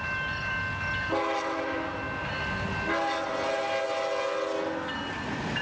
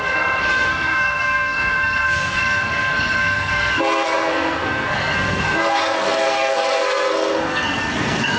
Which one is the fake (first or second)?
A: second